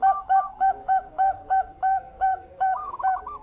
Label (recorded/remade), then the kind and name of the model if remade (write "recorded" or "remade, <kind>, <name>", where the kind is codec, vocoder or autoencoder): remade, codec, DAC